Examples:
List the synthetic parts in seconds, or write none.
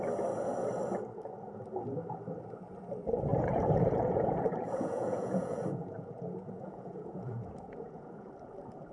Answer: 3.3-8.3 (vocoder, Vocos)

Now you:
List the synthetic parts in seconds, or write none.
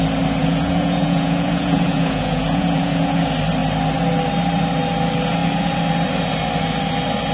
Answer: 0.4-3.2 (vocoder, Vocos)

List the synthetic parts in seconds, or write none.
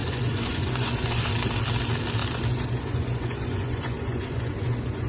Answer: 0.0-1.3 (vocoder, Vocos); 2.2-5.1